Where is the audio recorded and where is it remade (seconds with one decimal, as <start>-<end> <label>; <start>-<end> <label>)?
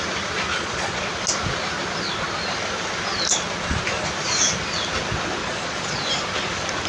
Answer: 0.0-0.5 recorded; 0.5-1.0 remade; 1.0-5.4 recorded; 5.4-6.0 remade; 6.0-6.9 recorded